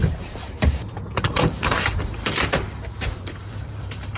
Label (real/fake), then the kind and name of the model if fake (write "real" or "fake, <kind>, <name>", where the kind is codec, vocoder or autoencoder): fake, vocoder, BigVGAN v2